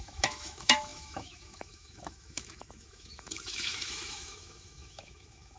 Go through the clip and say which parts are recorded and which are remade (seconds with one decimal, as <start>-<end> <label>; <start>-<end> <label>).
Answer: 0.0-5.6 remade